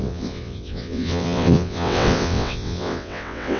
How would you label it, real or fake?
fake